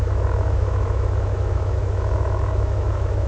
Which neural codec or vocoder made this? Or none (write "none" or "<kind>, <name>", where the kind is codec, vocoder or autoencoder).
autoencoder, DAC-VAE